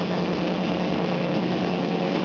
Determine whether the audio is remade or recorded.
remade